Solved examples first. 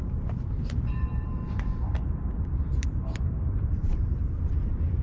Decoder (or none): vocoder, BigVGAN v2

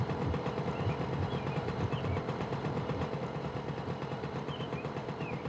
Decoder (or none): vocoder, BigVGAN v2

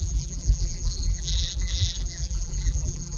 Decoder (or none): vocoder, BigVGAN v2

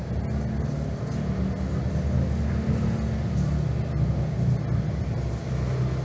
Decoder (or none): none